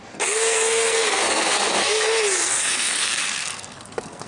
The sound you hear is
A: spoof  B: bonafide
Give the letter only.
A